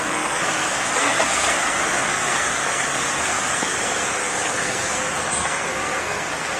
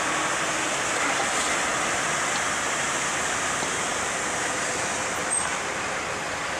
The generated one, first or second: first